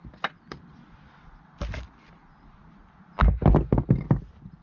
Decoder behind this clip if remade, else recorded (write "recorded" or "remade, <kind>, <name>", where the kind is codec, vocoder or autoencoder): recorded